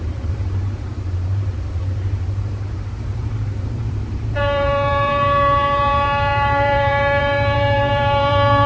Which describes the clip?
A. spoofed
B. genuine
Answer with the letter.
A